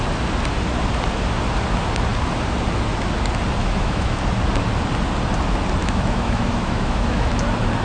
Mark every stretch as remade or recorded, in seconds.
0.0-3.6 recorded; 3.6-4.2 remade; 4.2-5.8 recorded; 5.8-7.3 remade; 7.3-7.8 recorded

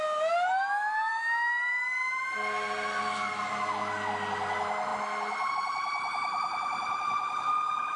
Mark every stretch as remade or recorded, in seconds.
0.0-8.0 recorded

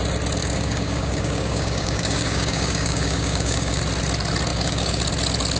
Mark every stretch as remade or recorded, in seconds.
0.0-0.4 recorded; 0.4-3.8 remade; 3.8-4.5 recorded; 4.5-5.0 remade; 5.0-5.6 recorded

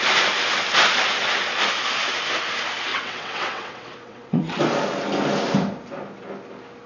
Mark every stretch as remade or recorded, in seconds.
0.0-2.9 recorded; 2.9-4.6 remade; 4.6-6.9 recorded

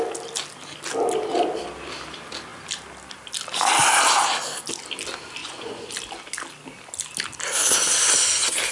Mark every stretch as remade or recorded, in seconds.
0.0-5.4 recorded; 5.4-5.9 remade; 5.9-8.7 recorded

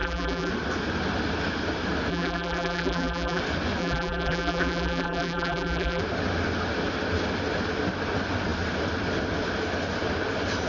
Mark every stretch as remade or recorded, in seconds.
0.0-0.5 remade; 0.5-2.1 recorded; 2.1-3.4 remade; 3.4-3.8 recorded; 3.8-6.0 remade; 6.0-10.7 recorded

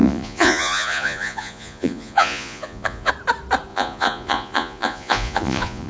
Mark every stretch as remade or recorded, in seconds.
0.0-3.1 remade; 3.1-3.7 recorded; 3.7-5.9 remade